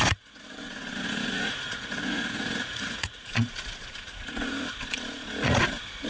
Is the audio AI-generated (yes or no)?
yes